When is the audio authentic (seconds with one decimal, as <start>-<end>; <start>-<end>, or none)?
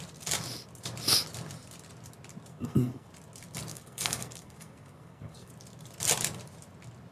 0.0-2.5; 3.1-3.7; 5.5-7.1